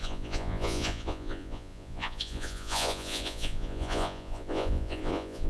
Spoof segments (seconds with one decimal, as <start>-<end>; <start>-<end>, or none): 0.0-5.5